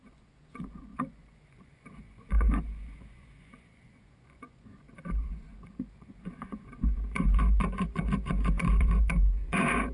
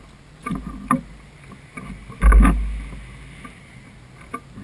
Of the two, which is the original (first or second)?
second